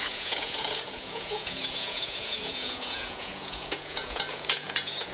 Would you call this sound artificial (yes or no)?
yes